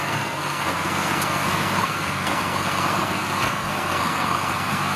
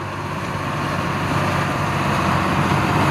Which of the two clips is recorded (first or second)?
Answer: second